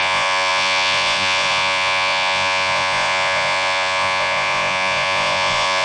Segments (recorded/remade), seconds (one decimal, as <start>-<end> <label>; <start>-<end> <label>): 0.0-5.8 remade